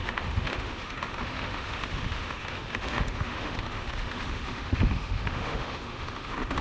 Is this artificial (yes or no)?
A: yes